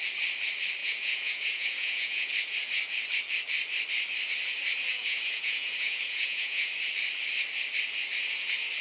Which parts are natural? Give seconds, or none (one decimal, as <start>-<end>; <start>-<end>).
0.0-0.8; 2.3-4.9; 6.7-8.8